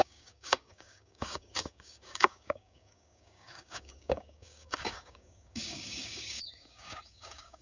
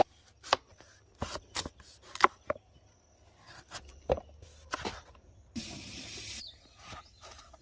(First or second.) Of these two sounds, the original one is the second